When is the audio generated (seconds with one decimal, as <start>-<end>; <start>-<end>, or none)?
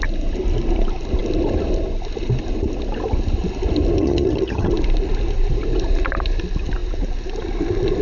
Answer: 4.0-4.7